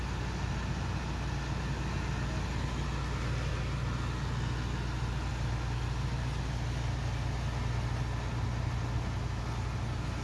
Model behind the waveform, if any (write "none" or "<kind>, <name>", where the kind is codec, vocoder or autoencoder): none